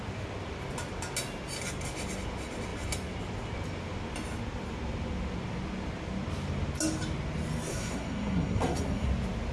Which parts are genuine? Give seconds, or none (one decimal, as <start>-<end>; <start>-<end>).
0.0-7.7; 9.1-9.5